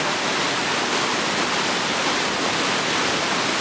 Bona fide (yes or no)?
yes